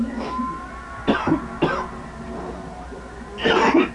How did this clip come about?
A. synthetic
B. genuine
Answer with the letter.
B